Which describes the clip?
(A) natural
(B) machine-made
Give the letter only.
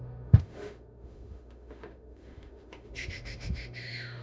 B